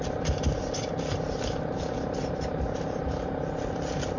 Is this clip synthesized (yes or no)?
no